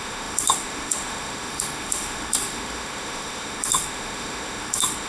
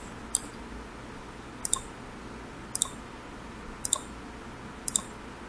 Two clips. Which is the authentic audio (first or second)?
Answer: second